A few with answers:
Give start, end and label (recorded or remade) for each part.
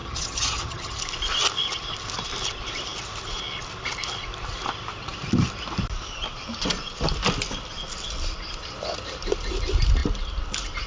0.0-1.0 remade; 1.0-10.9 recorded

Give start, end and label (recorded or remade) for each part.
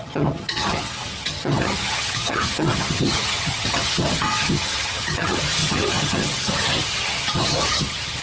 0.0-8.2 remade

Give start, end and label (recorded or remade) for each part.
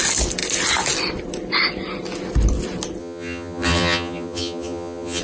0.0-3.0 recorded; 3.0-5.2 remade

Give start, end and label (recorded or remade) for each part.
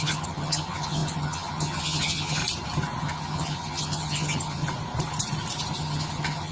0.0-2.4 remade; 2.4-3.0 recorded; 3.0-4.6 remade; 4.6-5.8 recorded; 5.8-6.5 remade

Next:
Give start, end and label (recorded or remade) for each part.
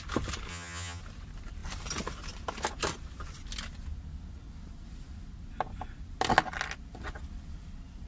0.0-0.5 recorded; 0.5-1.0 remade; 1.0-8.1 recorded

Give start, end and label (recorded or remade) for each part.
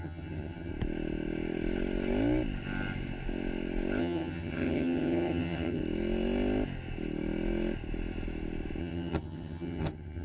0.0-0.7 remade; 0.7-4.0 recorded; 4.0-5.8 remade; 5.8-8.8 recorded; 8.8-10.2 remade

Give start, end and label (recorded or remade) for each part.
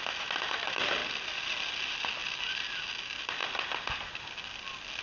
0.0-5.0 recorded